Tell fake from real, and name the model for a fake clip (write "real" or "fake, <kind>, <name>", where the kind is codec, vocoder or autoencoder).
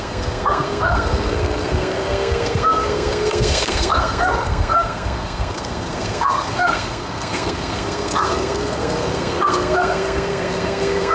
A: fake, codec, SNAC